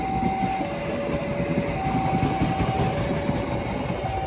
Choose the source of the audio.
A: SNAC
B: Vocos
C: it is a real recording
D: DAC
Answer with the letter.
C